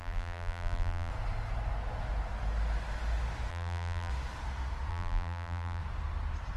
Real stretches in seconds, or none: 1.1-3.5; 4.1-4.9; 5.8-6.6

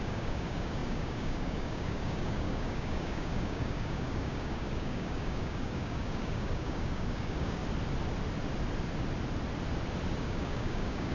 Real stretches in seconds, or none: 7.6-10.2

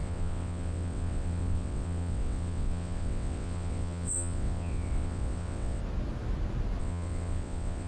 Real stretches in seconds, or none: 5.8-6.8

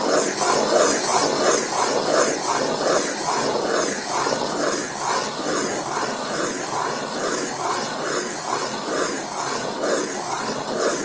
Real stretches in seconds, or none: 0.0-11.0

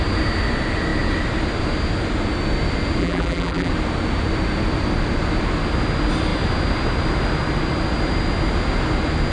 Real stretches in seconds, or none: 0.0-3.0; 3.7-9.3

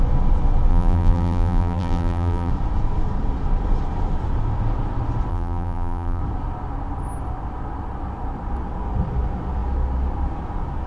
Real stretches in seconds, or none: 0.0-0.7; 2.5-5.3; 6.2-10.9

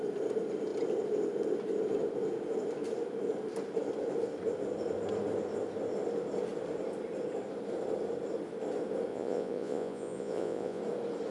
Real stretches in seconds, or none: 0.0-9.1; 10.8-11.3